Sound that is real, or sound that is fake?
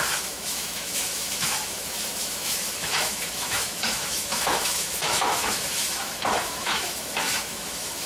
fake